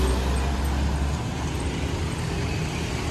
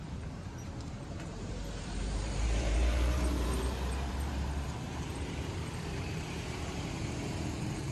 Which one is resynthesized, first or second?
second